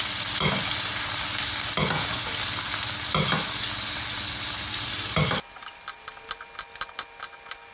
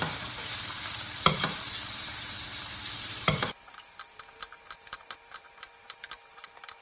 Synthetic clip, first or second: second